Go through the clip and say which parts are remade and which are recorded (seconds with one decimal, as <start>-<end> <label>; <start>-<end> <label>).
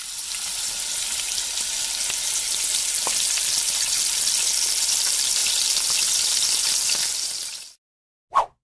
0.0-8.6 recorded